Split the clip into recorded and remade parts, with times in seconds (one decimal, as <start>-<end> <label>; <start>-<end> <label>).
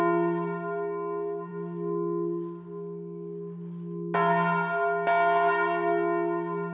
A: 0.0-6.7 recorded